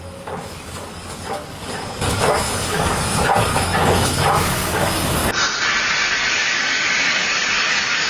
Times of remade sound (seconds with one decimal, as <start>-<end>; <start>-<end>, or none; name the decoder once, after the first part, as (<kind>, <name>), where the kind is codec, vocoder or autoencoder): 0.0-5.2 (codec, DAC); 6.3-8.1